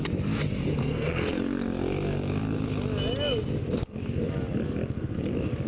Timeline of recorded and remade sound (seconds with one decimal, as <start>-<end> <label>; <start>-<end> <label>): 0.0-0.8 recorded; 0.8-1.4 remade; 1.4-5.7 recorded